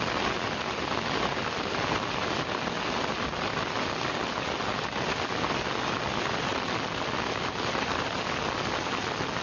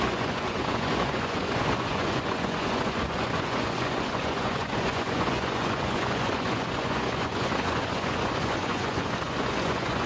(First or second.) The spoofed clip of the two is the second